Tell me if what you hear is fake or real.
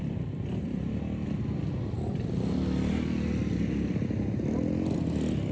real